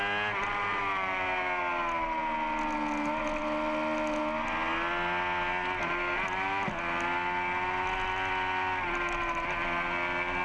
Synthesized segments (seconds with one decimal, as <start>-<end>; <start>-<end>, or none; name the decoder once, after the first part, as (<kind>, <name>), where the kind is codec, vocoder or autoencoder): none

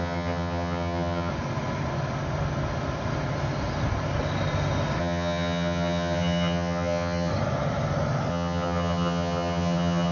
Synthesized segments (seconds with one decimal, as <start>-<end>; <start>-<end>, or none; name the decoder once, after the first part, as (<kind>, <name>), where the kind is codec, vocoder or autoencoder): 0.0-1.3 (vocoder, HiFi-GAN); 5.0-7.3; 8.3-10.1

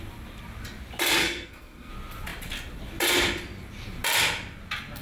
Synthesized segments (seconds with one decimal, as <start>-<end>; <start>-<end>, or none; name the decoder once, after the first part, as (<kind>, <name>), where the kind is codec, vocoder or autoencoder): 1.2-1.9 (codec, SNAC)